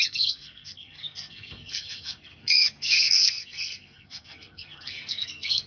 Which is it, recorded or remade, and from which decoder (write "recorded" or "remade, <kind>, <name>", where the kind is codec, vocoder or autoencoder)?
remade, codec, SNAC